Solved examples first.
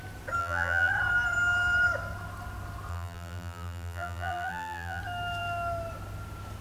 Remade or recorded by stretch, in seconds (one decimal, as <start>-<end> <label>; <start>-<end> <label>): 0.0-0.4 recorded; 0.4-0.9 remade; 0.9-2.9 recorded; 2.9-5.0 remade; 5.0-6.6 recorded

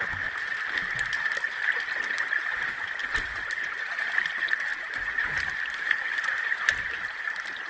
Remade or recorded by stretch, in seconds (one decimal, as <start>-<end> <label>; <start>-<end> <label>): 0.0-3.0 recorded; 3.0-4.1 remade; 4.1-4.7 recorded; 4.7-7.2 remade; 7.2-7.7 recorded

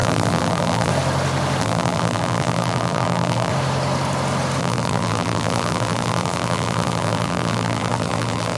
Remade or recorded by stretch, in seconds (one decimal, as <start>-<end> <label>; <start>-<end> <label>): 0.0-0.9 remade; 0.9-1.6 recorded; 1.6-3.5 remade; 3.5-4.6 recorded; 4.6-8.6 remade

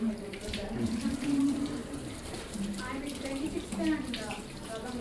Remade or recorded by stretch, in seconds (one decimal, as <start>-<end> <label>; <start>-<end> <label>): 0.0-5.0 remade

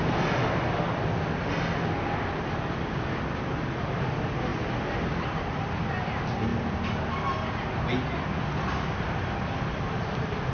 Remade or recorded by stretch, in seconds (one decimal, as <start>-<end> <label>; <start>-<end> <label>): 0.0-10.5 recorded

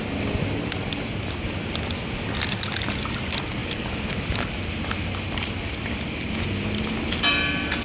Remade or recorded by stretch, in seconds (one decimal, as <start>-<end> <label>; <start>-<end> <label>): 0.0-7.8 recorded